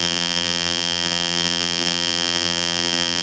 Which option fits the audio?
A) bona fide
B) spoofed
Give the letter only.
B